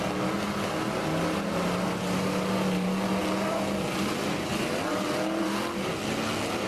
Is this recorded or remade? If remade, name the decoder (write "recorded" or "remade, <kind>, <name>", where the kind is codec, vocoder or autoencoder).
recorded